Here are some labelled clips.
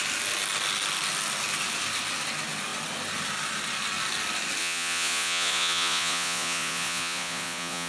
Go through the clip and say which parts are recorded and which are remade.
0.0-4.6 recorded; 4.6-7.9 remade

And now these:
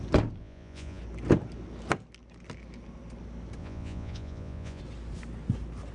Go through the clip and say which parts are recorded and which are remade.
0.0-0.4 recorded; 0.4-1.0 remade; 1.0-3.6 recorded; 3.6-4.8 remade; 4.8-5.9 recorded

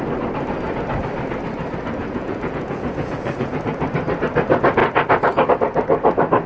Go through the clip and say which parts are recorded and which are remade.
0.0-2.0 recorded; 2.0-3.6 remade; 3.6-6.5 recorded